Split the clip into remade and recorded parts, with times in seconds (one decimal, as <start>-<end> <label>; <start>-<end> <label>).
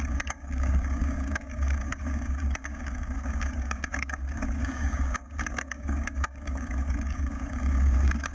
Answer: 0.0-8.3 remade